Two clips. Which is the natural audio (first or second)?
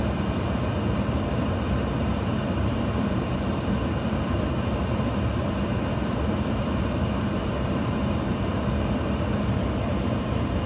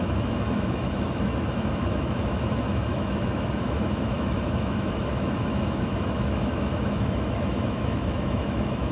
first